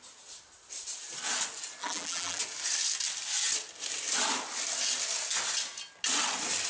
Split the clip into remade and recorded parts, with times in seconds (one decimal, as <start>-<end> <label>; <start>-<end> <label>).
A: 0.0-1.8 recorded; 1.8-2.4 remade; 2.4-6.7 recorded